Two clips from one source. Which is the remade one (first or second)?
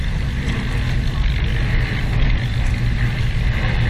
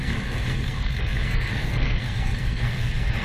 second